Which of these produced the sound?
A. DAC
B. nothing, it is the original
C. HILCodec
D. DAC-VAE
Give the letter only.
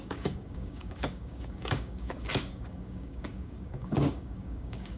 A